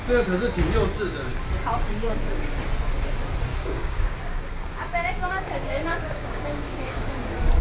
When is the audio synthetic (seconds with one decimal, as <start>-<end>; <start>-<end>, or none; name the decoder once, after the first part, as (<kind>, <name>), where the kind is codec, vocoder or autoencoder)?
3.5-7.1 (codec, DAC)